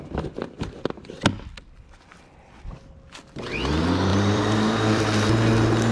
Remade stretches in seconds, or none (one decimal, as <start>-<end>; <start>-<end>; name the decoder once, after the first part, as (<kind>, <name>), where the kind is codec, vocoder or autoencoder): 4.1-5.0 (vocoder, BigVGAN v2)